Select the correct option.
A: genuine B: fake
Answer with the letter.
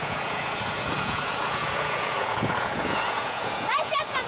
B